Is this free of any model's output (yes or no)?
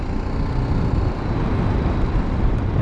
yes